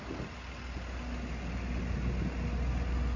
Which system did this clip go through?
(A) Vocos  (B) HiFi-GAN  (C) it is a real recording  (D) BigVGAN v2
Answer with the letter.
C